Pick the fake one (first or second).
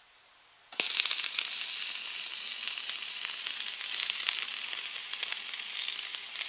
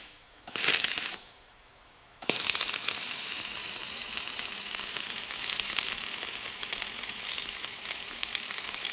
second